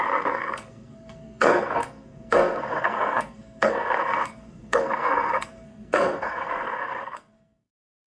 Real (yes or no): no